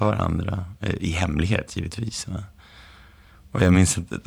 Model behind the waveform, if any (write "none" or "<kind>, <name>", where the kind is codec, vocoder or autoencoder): vocoder, BigVGAN v2